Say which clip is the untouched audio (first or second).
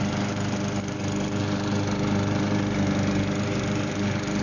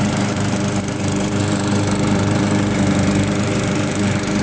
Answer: first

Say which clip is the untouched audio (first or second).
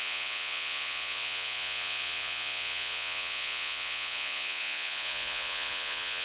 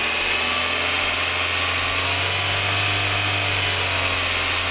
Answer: second